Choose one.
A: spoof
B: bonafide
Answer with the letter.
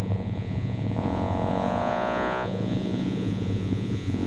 A